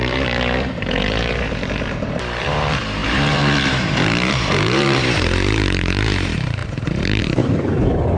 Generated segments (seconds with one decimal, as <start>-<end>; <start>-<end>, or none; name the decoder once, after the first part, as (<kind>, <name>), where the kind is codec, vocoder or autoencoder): 0.0-8.2 (vocoder, BigVGAN v2)